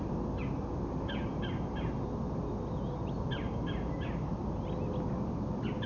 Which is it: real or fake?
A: real